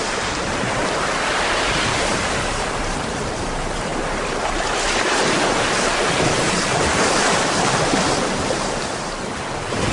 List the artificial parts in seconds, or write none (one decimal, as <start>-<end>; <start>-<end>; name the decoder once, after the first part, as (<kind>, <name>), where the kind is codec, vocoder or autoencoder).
0.0-3.9 (vocoder, BigVGAN v2); 5.7-9.9